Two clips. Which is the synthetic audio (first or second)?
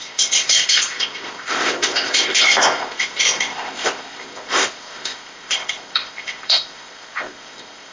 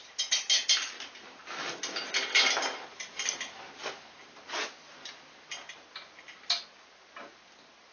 first